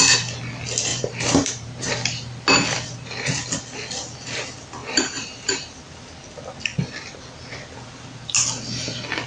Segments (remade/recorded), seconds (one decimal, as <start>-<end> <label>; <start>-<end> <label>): 0.0-0.9 recorded; 0.9-1.9 remade; 1.9-4.8 recorded; 4.8-5.8 remade; 5.8-9.3 recorded